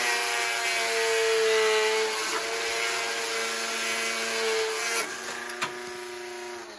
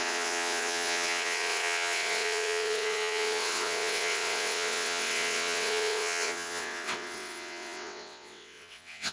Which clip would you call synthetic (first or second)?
second